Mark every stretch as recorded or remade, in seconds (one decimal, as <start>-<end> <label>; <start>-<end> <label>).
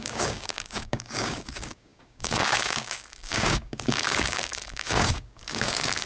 0.0-6.0 remade